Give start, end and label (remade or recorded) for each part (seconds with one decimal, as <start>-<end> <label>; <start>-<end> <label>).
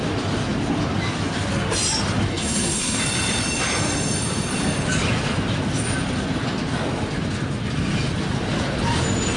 0.0-2.3 recorded; 2.3-3.0 remade; 3.0-9.4 recorded